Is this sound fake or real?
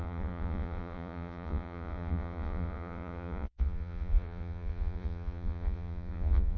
fake